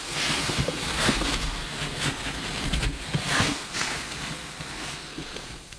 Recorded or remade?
remade